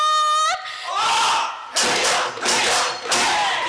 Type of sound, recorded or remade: recorded